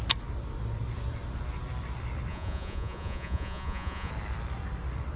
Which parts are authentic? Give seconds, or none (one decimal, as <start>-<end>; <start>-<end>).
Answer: 0.0-2.3; 4.1-5.2

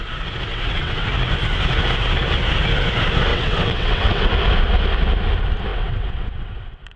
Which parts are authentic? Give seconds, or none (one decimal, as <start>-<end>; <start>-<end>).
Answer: 0.0-0.5; 1.1-3.3; 4.3-5.7

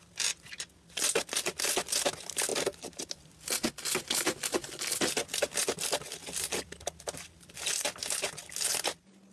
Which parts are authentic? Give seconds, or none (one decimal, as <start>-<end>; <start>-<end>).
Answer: 0.0-5.6; 8.3-9.3

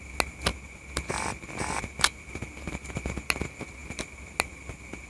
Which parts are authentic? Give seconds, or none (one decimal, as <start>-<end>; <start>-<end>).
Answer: 0.0-5.1

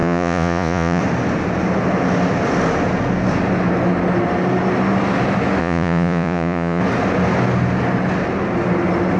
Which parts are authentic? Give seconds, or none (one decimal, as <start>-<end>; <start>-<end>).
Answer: 1.0-5.6; 6.8-9.2

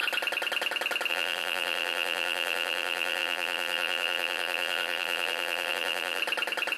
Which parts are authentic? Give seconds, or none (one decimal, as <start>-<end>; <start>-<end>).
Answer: 0.0-1.1; 6.2-6.8

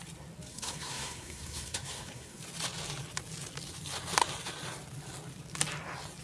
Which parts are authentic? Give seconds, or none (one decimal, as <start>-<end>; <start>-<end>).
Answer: 0.0-0.5; 2.4-6.2

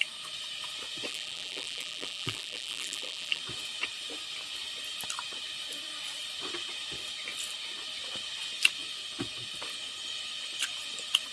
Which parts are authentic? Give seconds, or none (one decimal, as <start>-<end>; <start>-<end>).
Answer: 0.0-1.1; 3.4-11.3